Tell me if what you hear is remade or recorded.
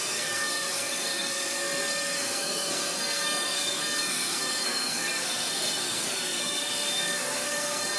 remade